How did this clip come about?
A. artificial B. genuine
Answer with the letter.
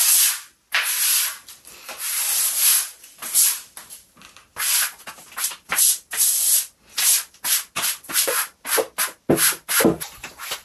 B